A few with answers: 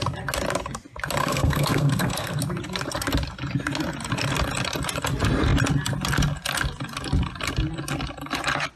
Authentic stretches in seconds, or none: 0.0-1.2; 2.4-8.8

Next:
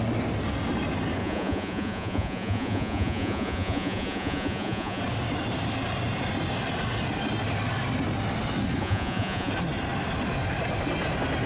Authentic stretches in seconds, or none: 0.0-1.2; 5.0-8.8; 9.5-11.5

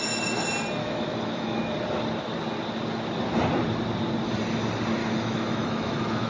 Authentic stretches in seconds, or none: 0.0-0.8; 1.6-5.0